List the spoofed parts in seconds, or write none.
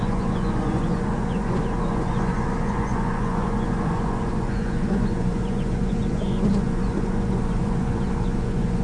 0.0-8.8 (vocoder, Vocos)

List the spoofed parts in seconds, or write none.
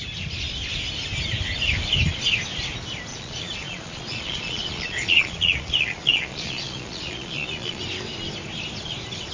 3.1-7.8 (vocoder, Vocos)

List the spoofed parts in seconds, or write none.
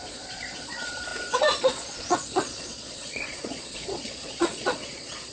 0.0-5.3 (vocoder, Vocos)